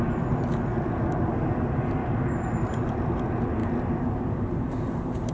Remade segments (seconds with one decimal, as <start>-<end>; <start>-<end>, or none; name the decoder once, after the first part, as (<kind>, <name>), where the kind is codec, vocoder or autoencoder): 2.0-2.9 (vocoder, BigVGAN v2)